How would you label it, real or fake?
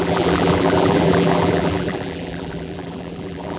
fake